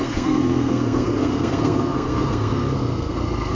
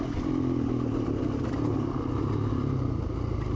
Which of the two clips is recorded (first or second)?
second